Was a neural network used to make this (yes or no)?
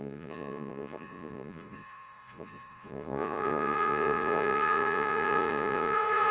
yes